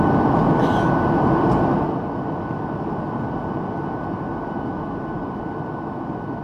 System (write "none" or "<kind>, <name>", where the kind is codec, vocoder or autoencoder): none